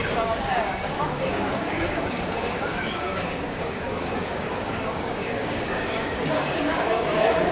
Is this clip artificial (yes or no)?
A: yes